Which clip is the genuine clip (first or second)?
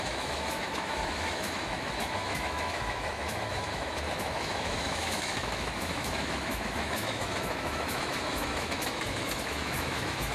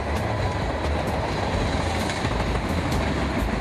second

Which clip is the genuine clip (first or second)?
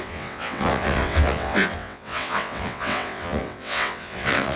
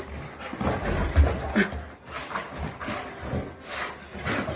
second